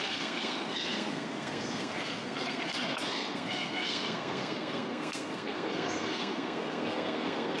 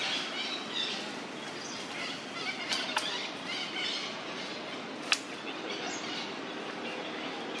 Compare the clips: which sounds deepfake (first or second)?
first